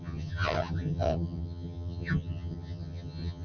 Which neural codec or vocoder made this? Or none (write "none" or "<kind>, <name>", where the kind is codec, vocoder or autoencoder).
vocoder, HiFi-GAN